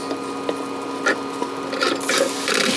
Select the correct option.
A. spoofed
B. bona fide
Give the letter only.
B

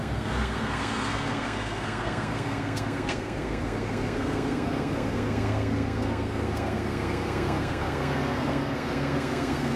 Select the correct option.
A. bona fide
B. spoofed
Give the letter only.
B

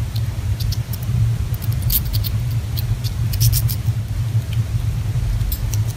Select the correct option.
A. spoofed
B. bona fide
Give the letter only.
B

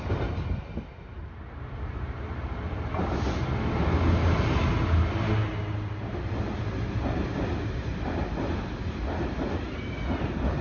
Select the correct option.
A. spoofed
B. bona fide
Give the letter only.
B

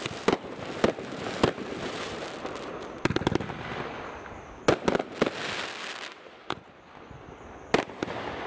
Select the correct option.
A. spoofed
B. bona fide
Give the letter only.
B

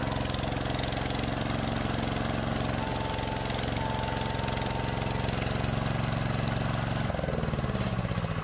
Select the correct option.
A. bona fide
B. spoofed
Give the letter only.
A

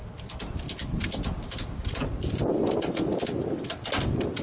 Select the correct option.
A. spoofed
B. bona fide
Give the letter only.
B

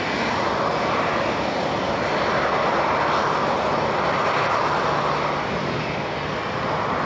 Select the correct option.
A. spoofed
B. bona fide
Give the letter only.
B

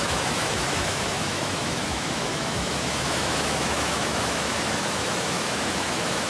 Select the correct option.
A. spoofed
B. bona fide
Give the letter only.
A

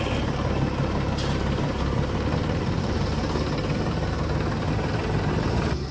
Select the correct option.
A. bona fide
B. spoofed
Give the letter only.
B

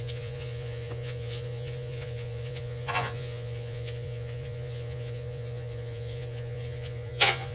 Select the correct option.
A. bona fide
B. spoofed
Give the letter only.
B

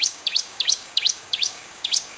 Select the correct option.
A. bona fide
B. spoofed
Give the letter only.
B